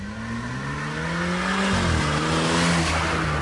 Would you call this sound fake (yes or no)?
no